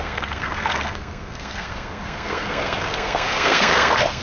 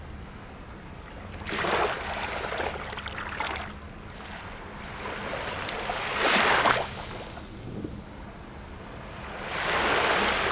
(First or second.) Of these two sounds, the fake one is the first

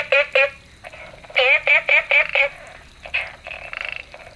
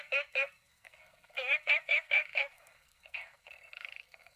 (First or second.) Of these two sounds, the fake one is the second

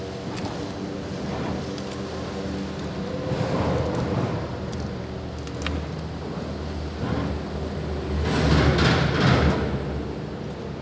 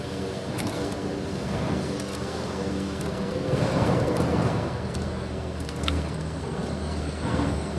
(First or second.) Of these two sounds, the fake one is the second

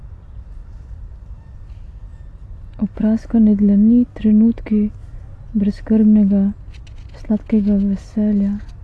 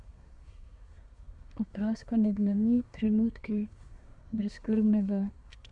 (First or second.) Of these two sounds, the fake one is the second